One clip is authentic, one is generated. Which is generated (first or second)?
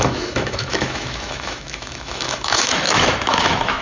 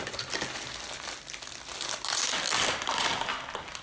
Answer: first